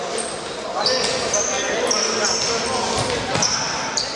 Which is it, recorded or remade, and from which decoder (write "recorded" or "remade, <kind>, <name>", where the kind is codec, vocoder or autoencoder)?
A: recorded